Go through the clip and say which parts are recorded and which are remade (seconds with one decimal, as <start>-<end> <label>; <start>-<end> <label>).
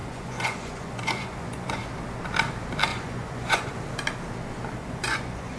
0.0-1.8 remade; 1.8-2.9 recorded; 2.9-3.7 remade; 3.7-4.8 recorded; 4.8-5.6 remade